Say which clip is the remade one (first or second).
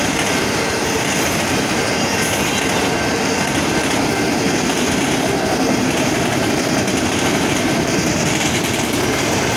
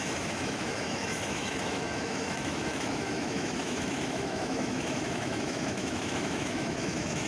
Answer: second